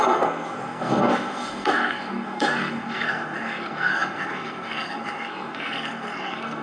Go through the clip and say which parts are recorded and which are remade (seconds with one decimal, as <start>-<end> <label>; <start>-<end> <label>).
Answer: 0.0-6.6 remade